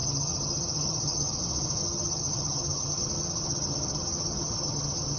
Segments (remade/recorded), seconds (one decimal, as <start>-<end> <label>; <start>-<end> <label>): 0.0-1.4 remade; 1.4-1.8 recorded; 1.8-5.2 remade